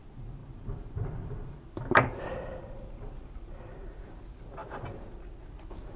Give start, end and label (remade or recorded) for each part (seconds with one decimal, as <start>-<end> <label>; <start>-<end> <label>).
0.0-4.6 remade; 4.6-5.4 recorded; 5.4-6.0 remade